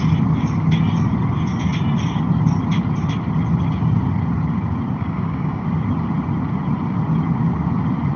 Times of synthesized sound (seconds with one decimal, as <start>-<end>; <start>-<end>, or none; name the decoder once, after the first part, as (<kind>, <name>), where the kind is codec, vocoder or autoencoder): 5.0-5.6 (codec, DAC)